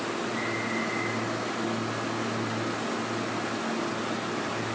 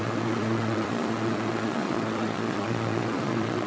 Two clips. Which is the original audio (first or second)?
first